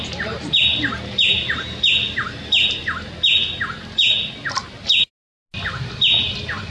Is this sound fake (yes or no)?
no